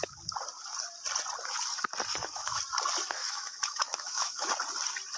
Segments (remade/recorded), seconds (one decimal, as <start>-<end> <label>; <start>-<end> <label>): 0.0-2.1 recorded; 2.1-2.6 remade; 2.6-3.2 recorded; 3.2-4.5 remade; 4.5-5.2 recorded